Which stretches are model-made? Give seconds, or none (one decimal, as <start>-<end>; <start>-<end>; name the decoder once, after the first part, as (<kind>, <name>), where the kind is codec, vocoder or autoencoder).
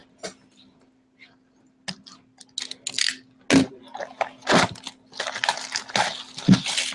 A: none